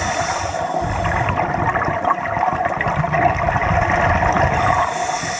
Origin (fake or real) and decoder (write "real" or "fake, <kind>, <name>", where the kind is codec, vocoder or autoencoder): real